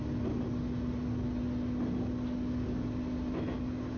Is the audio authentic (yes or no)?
yes